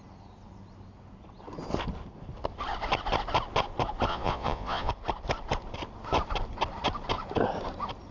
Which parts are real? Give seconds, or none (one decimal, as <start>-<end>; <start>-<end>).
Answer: 0.0-4.1; 4.9-8.1